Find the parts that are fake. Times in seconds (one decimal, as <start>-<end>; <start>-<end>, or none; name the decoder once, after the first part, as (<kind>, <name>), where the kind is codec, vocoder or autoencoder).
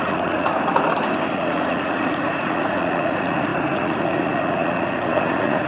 0.0-0.5 (vocoder, Vocos); 1.3-5.7